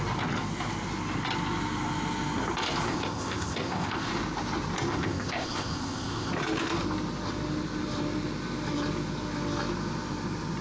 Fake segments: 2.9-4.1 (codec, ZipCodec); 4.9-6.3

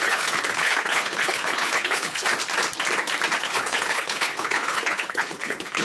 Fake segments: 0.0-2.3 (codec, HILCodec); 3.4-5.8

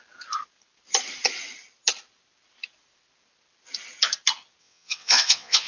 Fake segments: 4.6-5.7 (vocoder, WaveNeXt)